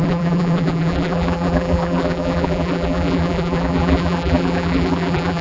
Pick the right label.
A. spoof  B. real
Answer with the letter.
A